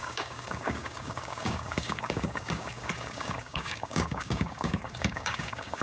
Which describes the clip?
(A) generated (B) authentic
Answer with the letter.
A